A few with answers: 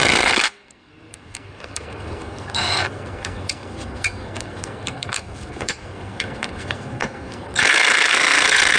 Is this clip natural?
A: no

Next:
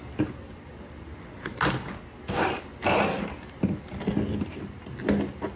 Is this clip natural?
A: yes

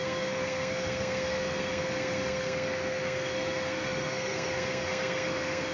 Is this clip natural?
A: no